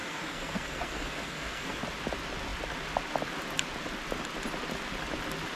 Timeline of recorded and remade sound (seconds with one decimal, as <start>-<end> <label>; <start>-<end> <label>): 0.0-1.8 remade; 1.8-5.6 recorded